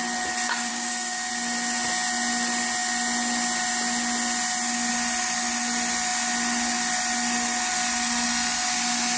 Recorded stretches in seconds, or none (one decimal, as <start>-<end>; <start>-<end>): 0.0-0.7; 1.3-9.2